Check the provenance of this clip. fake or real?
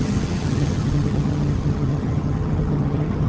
fake